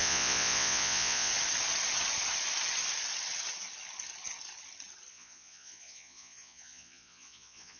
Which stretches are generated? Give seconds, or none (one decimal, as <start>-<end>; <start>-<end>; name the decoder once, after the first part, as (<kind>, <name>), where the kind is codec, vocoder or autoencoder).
0.0-1.3 (vocoder, Vocos); 5.1-7.8